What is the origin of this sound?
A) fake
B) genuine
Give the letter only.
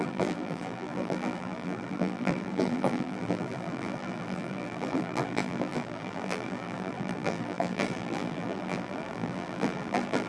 A